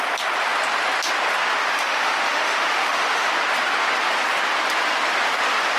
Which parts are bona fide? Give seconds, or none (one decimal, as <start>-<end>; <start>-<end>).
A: 0.0-1.6; 3.3-5.8